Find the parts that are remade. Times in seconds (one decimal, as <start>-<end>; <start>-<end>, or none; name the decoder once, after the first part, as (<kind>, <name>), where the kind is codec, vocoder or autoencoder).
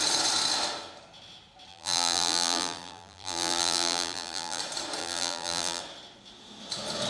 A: 1.7-4.6 (vocoder, BigVGAN v2); 5.0-5.8